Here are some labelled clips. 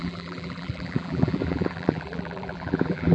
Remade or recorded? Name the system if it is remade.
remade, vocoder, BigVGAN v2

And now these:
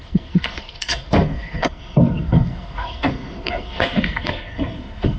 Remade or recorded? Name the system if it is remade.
remade, codec, SNAC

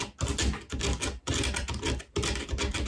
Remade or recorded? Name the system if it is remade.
recorded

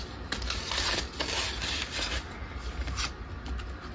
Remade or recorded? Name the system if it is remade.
recorded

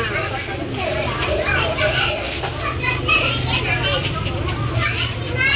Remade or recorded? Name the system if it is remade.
recorded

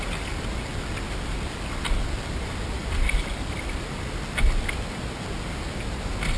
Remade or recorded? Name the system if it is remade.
recorded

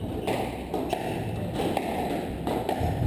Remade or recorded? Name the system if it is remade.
recorded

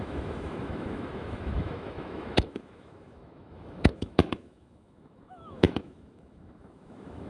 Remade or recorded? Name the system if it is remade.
remade, autoencoder, DAC-VAE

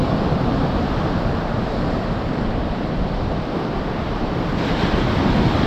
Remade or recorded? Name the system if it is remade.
remade, vocoder, BigVGAN v2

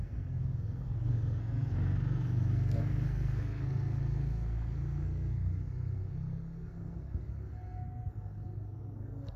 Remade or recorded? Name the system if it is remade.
remade, codec, SNAC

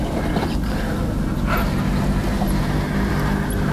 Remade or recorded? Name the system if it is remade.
recorded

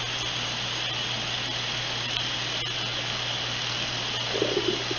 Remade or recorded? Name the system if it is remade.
recorded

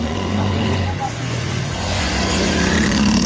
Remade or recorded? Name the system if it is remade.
remade, vocoder, Vocos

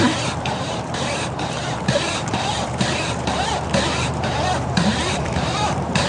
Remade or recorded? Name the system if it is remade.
remade, vocoder, BigVGAN v2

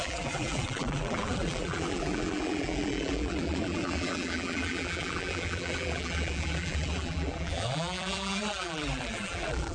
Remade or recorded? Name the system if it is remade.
remade, vocoder, BigVGAN v2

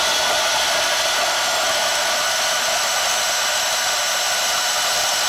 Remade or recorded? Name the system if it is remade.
recorded